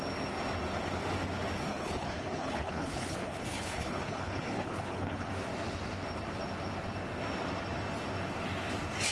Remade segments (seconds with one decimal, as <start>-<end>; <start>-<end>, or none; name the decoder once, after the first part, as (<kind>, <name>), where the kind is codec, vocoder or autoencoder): 1.7-5.3 (codec, HILCodec)